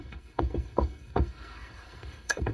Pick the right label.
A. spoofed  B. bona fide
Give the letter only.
A